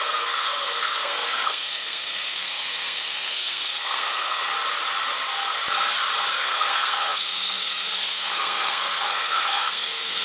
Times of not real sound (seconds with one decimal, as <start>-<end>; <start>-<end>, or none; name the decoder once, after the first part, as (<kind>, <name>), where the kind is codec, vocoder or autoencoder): 0.0-4.5 (codec, SNAC); 6.3-10.2